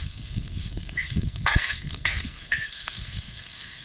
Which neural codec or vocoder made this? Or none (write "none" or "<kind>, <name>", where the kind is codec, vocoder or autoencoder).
codec, SNAC